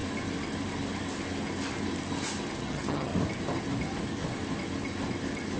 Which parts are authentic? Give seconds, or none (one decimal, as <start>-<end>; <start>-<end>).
0.0-2.6; 3.1-5.6